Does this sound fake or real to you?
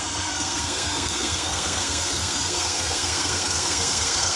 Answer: fake